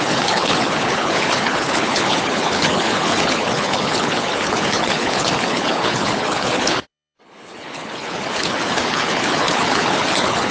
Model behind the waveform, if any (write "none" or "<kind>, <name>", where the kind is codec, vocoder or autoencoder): codec, HILCodec